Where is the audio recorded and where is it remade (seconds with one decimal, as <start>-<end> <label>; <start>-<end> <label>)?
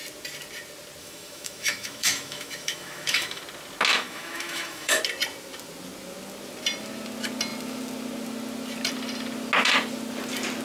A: 0.0-1.0 recorded; 1.0-3.4 remade; 3.4-3.9 recorded; 3.9-5.0 remade; 5.0-10.6 recorded